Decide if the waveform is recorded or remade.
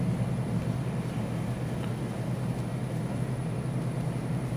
recorded